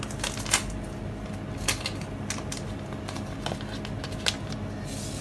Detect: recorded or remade recorded